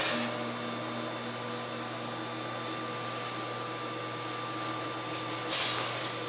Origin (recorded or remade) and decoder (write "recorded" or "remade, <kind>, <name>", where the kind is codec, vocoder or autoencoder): recorded